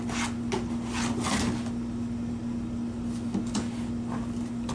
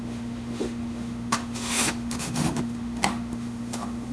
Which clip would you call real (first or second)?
first